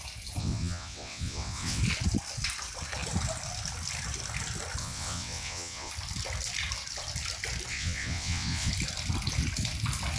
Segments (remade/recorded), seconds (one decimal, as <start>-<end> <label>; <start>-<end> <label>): 0.0-0.4 recorded; 0.4-1.8 remade; 1.8-4.8 recorded; 4.8-5.9 remade; 5.9-7.7 recorded; 7.7-8.7 remade; 8.7-10.2 recorded

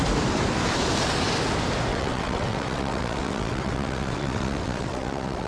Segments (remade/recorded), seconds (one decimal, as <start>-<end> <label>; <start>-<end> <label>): 0.0-1.9 recorded; 1.9-5.5 remade

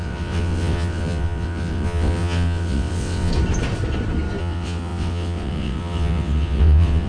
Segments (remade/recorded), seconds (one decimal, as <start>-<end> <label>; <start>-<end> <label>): 0.0-3.3 remade; 3.3-4.4 recorded; 4.4-7.1 remade

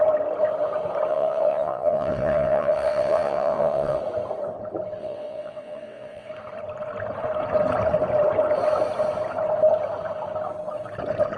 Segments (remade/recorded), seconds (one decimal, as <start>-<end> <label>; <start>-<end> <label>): 0.0-1.1 recorded; 1.1-4.0 remade; 4.0-5.0 recorded; 5.0-6.3 remade; 6.3-11.4 recorded

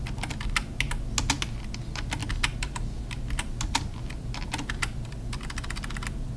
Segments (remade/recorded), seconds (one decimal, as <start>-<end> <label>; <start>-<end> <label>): 0.0-6.4 recorded

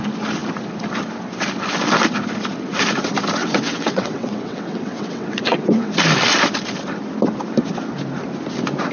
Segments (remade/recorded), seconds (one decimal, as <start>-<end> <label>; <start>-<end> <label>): 0.0-3.4 recorded; 3.4-5.9 remade; 5.9-8.9 recorded